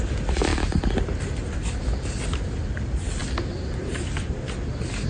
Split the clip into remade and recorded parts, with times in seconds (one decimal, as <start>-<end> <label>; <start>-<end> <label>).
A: 0.0-5.1 recorded